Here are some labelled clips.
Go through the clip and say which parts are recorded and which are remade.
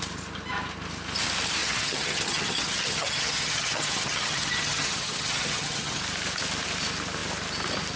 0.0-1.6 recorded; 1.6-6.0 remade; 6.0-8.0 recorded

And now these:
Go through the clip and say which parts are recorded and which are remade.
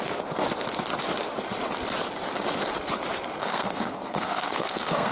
0.0-3.4 recorded; 3.4-5.1 remade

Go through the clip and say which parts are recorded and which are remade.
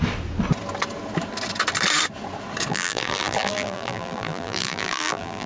0.0-2.7 recorded; 2.7-5.5 remade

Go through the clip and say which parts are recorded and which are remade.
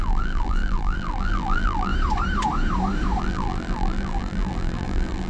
0.0-1.9 remade; 1.9-3.2 recorded; 3.2-5.3 remade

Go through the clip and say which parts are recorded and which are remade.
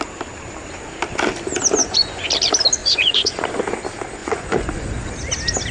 0.0-1.8 recorded; 1.8-2.3 remade; 2.3-2.8 recorded; 2.8-3.5 remade; 3.5-4.2 recorded; 4.2-5.1 remade; 5.1-5.7 recorded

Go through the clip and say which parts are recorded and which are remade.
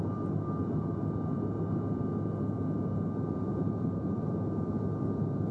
0.0-3.5 recorded; 3.5-4.3 remade; 4.3-5.5 recorded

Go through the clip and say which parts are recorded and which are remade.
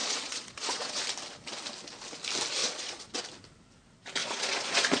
0.0-1.0 remade; 1.0-2.6 recorded; 2.6-3.2 remade; 3.2-4.2 recorded; 4.2-5.0 remade